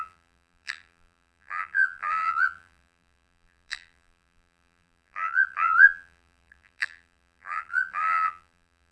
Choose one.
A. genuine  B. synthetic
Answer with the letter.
B